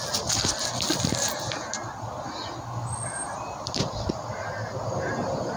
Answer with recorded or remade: recorded